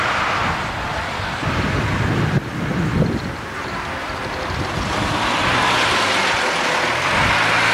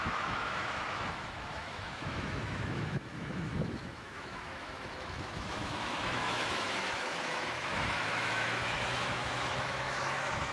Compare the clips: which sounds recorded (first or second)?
first